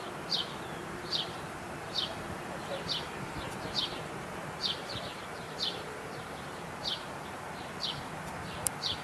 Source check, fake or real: fake